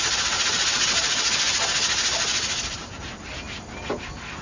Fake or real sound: real